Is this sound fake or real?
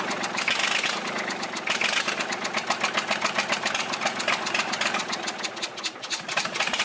real